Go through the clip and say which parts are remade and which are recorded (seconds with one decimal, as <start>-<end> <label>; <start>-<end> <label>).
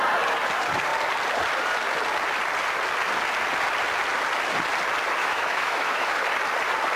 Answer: 0.0-5.2 recorded; 5.2-6.1 remade; 6.1-7.0 recorded